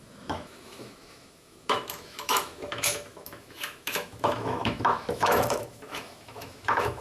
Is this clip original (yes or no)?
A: no